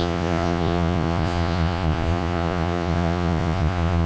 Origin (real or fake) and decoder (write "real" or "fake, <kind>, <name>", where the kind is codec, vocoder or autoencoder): fake, vocoder, Vocos